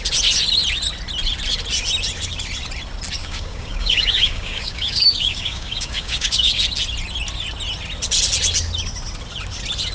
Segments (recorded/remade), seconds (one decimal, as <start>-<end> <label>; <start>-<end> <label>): 0.0-3.2 recorded; 3.2-6.6 remade; 6.6-9.9 recorded

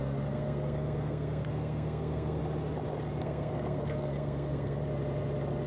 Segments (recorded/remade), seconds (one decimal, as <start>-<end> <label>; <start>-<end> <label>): 0.0-2.4 remade; 2.4-3.2 recorded; 3.2-4.8 remade; 4.8-5.7 recorded

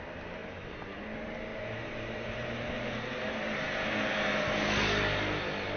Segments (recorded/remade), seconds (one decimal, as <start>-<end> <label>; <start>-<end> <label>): 0.0-0.4 recorded; 0.4-1.0 remade; 1.0-1.5 recorded; 1.5-4.7 remade; 4.7-5.8 recorded

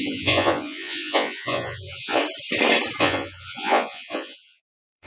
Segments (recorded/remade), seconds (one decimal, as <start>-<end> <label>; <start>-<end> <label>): 0.0-2.2 remade; 2.2-3.0 recorded; 3.0-5.1 remade

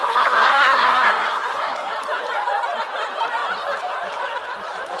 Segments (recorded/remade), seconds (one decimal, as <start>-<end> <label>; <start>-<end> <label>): 0.0-1.9 remade; 1.9-5.0 recorded